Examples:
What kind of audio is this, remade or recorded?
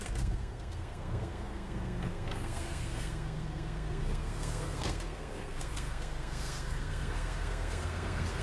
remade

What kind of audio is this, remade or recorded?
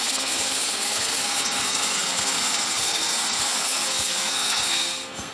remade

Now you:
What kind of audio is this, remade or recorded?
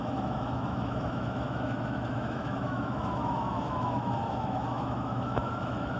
remade